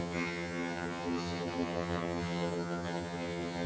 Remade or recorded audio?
remade